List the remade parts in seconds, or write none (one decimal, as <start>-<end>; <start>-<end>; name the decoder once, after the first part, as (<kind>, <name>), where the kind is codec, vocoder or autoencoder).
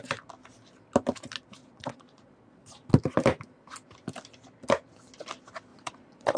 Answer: 1.6-2.9 (vocoder, Vocos); 5.7-6.4